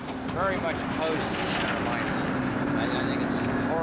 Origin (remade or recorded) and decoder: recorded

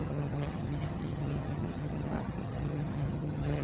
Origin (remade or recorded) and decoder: remade, vocoder, HiFi-GAN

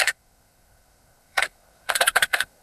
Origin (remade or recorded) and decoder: remade, codec, SNAC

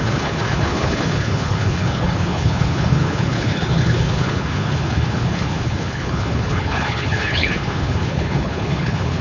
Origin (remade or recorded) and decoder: remade, codec, HILCodec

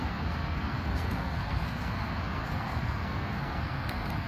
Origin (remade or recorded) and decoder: remade, codec, SNAC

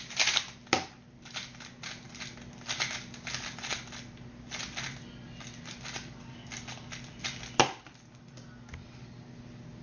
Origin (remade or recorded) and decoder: recorded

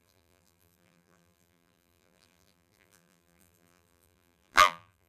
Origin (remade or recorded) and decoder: remade, vocoder, BigVGAN v2